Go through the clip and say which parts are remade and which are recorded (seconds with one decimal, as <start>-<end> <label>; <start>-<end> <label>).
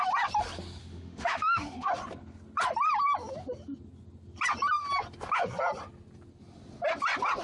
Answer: 0.0-0.8 recorded; 0.8-1.9 remade; 1.9-7.4 recorded